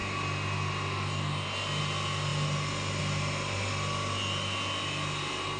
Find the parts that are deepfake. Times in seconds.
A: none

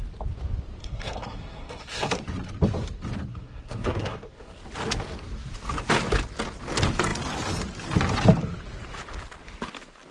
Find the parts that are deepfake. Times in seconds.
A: 0.8-2.2 (codec, SNAC); 3.3-4.6